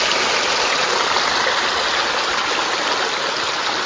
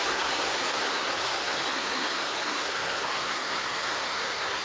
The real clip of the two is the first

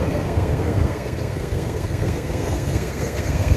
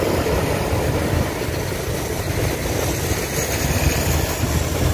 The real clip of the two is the second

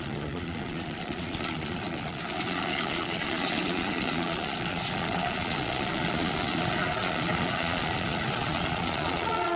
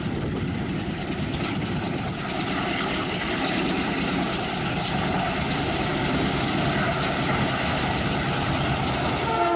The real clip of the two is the second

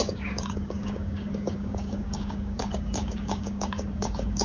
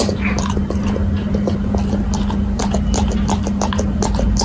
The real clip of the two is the second